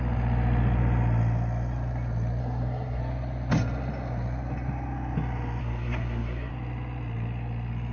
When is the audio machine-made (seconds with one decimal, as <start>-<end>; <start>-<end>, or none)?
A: 2.4-3.0; 5.6-6.5